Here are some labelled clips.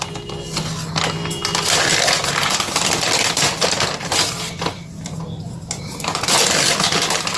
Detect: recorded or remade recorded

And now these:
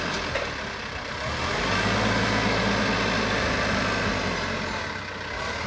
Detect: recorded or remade recorded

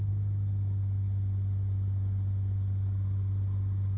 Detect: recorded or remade recorded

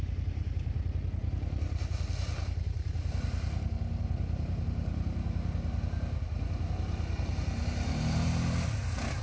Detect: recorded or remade recorded